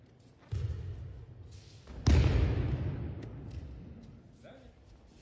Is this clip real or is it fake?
real